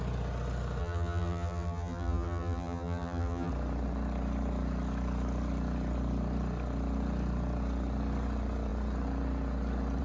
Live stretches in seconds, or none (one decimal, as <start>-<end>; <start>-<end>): 0.0-0.8; 3.5-10.0